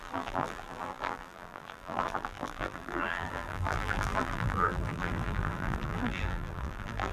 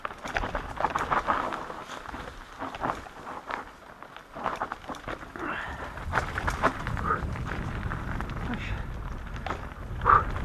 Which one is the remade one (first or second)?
first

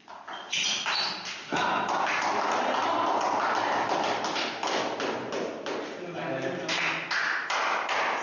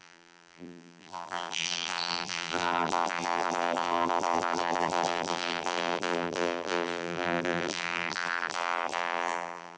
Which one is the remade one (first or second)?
second